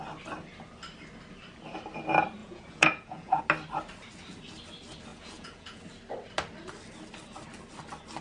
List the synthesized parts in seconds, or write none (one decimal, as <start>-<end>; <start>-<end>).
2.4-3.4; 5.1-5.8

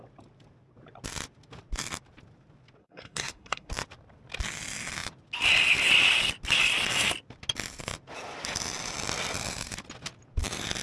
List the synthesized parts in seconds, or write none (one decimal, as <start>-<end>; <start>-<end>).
2.8-3.7

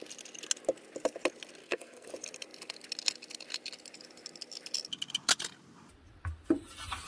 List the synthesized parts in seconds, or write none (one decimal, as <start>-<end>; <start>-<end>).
1.6-2.1

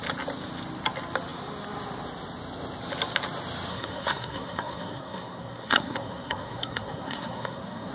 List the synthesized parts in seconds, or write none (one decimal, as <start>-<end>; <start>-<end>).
3.7-7.9